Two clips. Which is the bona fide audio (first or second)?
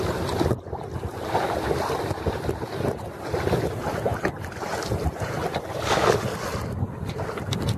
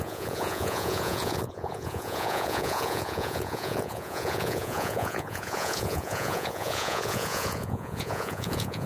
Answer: first